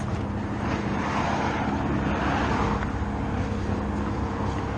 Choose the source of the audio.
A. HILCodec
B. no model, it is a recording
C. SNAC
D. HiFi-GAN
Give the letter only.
B